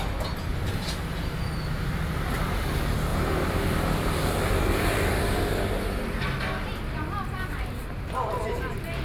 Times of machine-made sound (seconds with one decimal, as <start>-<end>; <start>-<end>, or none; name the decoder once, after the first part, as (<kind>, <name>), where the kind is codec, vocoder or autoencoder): 0.5-1.4 (vocoder, BigVGAN v2); 3.1-5.6